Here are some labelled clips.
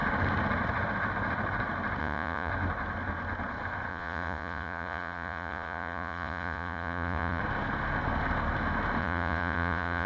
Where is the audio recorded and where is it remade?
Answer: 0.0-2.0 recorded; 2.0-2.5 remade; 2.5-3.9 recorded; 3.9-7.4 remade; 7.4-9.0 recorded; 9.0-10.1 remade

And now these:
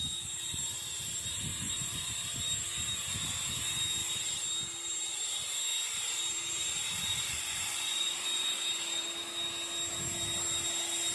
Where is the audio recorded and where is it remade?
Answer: 0.0-1.5 recorded; 1.5-2.1 remade; 2.1-7.1 recorded; 7.1-8.6 remade; 8.6-11.1 recorded

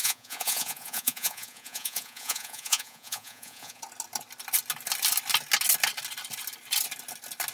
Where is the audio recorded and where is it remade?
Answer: 0.0-3.8 remade; 3.8-7.5 recorded

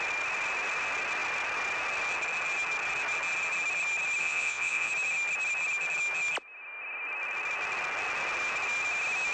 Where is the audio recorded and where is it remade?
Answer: 0.0-4.2 recorded; 4.2-4.9 remade; 4.9-9.3 recorded